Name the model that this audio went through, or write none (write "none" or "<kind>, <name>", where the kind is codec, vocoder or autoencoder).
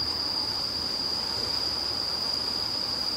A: vocoder, BigVGAN v2